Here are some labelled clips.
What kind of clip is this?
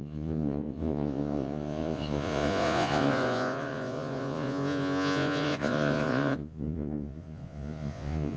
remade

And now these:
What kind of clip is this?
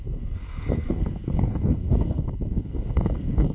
remade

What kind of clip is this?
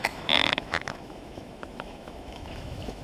remade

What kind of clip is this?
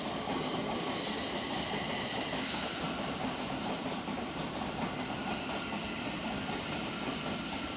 recorded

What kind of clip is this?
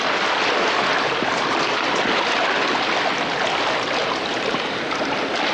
recorded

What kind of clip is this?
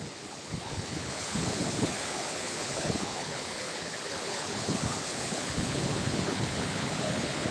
remade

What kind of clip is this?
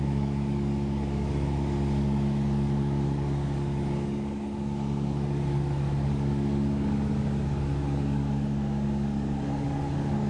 remade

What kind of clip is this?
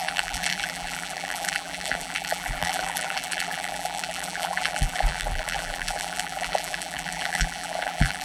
remade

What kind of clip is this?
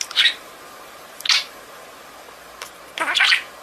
recorded